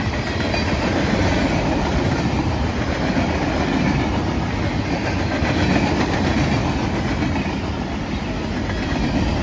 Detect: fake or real real